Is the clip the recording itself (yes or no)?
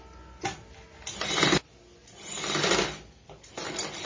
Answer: yes